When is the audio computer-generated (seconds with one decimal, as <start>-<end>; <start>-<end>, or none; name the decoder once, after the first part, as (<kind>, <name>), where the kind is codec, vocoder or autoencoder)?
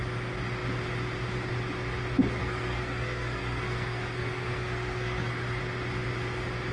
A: 2.4-5.6 (codec, SNAC)